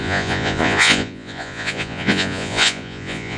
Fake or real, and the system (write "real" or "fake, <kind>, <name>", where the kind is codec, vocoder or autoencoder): fake, vocoder, Vocos